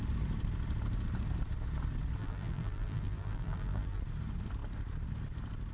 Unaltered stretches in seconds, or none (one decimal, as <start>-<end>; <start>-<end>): 0.0-2.2; 4.0-5.7